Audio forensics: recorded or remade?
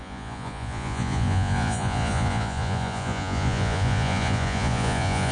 remade